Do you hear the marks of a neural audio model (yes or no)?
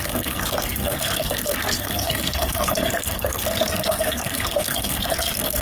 yes